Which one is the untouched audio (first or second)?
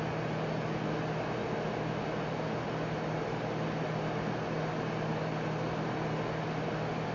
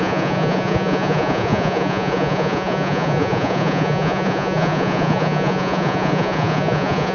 first